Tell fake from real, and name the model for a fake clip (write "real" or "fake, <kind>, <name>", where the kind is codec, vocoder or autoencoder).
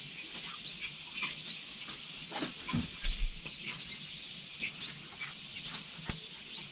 real